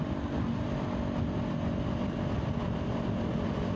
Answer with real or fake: real